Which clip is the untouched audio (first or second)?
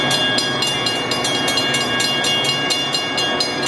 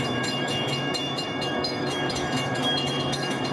first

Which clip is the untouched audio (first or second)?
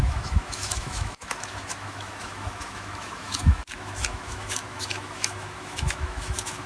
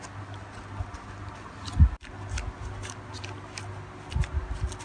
second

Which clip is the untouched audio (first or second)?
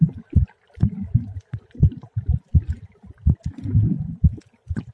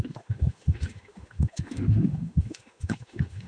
first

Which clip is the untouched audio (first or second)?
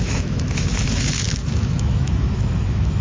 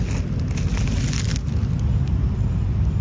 second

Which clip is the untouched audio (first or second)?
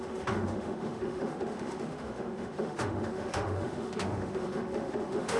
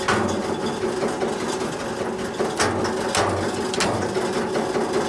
second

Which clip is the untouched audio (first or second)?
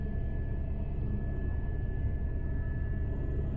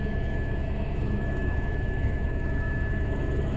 first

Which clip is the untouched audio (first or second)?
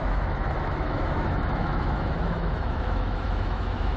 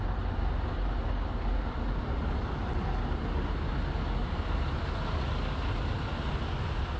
second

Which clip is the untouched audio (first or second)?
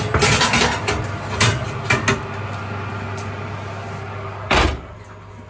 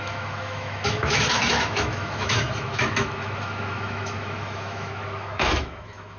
first